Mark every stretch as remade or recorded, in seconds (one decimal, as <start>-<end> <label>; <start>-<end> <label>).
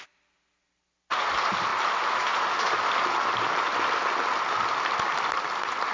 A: 0.0-5.9 recorded